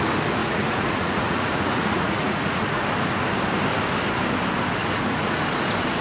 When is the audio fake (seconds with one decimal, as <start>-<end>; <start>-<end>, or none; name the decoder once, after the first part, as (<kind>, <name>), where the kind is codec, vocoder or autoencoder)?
0.4-2.8 (vocoder, Vocos); 4.8-5.4